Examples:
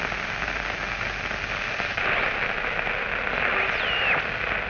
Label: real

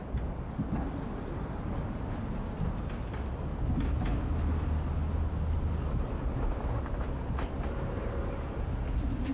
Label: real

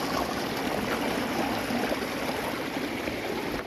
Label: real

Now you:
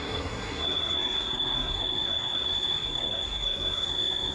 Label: fake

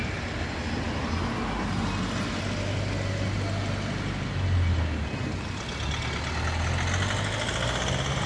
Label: real